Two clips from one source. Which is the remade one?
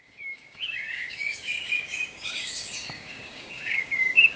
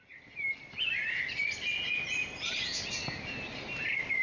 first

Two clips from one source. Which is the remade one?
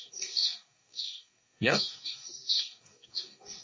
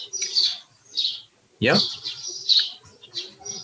first